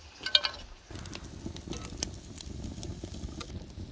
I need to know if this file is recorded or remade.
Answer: recorded